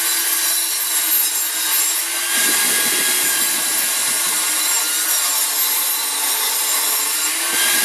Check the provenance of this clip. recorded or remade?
recorded